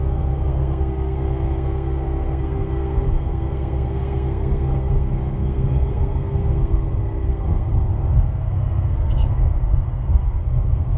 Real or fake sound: fake